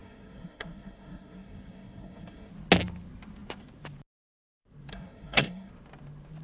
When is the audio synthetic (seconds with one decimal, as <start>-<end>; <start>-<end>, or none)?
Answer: 0.0-2.5; 4.9-5.7

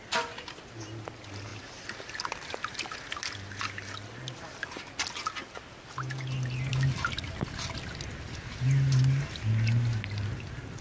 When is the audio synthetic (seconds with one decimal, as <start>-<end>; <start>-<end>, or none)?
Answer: none